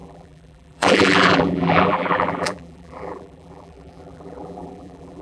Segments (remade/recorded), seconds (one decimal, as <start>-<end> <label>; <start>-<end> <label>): 0.0-5.2 remade